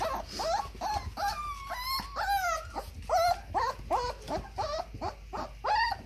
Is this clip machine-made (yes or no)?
no